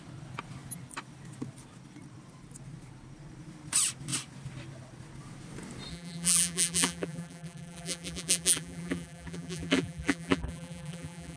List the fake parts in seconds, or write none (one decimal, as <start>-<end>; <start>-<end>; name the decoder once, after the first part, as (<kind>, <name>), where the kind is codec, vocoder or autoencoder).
5.9-11.4 (vocoder, BigVGAN v2)

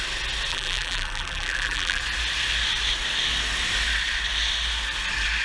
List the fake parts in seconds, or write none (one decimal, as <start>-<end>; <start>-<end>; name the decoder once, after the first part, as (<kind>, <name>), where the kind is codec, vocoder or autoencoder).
0.5-2.0 (vocoder, BigVGAN v2)

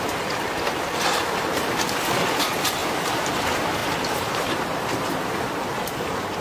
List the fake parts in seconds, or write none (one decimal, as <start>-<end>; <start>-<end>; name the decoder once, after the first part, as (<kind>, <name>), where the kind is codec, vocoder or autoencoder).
1.2-1.8 (vocoder, BigVGAN v2); 2.8-3.3; 3.8-5.5

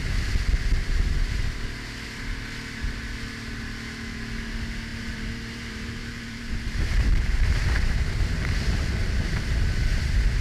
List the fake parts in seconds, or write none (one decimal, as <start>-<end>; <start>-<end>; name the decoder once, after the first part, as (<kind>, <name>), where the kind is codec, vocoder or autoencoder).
0.8-1.4 (vocoder, BigVGAN v2); 4.9-8.9

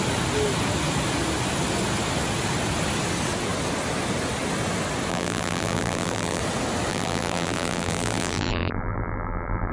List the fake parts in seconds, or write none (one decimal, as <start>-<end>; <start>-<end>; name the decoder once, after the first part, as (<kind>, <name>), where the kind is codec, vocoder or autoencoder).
5.1-6.4 (vocoder, BigVGAN v2); 6.9-9.7

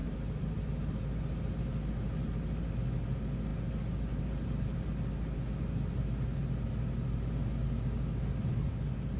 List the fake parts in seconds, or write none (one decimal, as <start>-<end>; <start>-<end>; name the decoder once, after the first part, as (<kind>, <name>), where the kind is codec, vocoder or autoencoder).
0.0-1.2 (vocoder, BigVGAN v2)

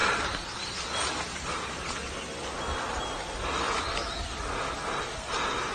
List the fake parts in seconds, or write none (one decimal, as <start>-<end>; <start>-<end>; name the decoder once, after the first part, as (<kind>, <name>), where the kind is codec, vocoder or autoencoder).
0.0-1.5 (vocoder, BigVGAN v2); 2.7-4.2

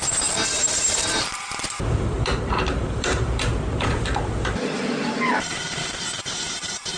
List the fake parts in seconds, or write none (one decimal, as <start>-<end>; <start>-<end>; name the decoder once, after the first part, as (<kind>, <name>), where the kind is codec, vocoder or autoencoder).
1.6-7.0 (vocoder, BigVGAN v2)